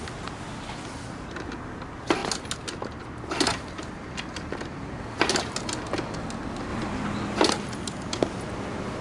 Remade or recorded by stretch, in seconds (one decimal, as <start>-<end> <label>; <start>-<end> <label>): 0.0-3.5 recorded; 3.5-4.9 remade; 4.9-9.0 recorded